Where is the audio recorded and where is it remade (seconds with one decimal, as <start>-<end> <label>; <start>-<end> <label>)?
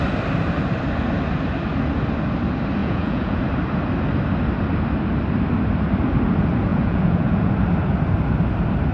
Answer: 0.0-2.8 recorded; 2.8-3.4 remade; 3.4-6.7 recorded; 6.7-7.5 remade; 7.5-8.9 recorded